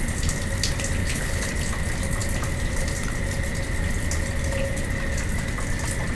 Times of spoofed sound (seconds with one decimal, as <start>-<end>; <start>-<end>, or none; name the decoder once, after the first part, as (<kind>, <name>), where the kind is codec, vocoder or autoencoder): 1.0-1.5 (codec, HILCodec)